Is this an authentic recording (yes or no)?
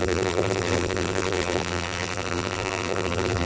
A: no